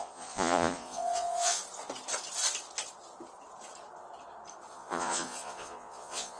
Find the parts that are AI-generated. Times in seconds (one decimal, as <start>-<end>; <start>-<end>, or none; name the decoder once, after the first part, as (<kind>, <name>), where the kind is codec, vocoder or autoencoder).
0.0-1.6 (vocoder, Vocos); 4.7-6.4